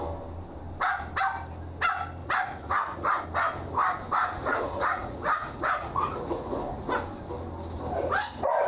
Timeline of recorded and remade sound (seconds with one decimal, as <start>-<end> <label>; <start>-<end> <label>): 0.0-2.2 recorded; 2.2-3.2 remade; 3.2-4.4 recorded; 4.4-6.9 remade; 6.9-8.7 recorded